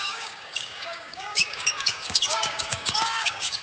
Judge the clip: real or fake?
fake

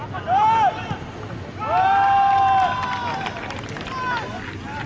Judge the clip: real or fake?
real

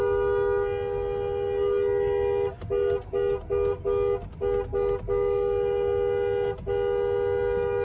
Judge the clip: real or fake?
real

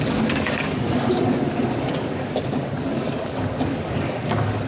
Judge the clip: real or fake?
fake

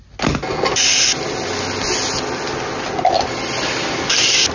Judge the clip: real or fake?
real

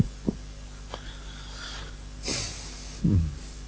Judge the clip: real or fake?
real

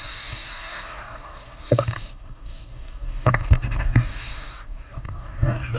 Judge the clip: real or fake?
fake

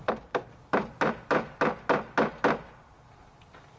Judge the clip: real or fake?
real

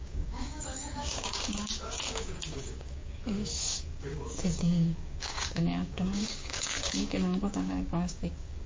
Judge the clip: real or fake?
fake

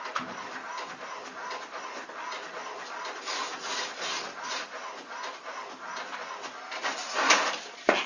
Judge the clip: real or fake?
real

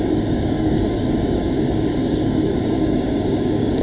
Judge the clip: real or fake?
fake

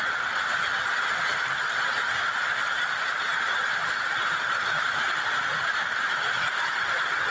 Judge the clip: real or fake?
real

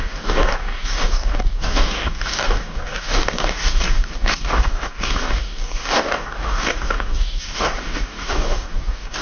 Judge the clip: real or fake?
fake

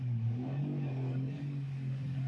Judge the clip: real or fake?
fake